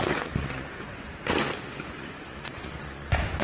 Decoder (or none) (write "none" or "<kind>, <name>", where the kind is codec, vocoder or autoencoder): vocoder, Vocos